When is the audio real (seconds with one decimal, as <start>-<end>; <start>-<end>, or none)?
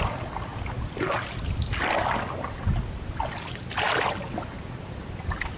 0.0-5.6